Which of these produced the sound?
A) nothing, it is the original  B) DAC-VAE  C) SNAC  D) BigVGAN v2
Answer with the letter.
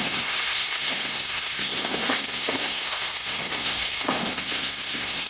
C